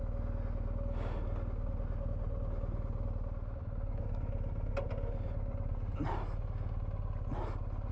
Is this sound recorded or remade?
recorded